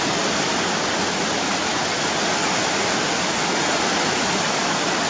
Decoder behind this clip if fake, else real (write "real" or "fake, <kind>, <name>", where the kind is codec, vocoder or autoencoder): real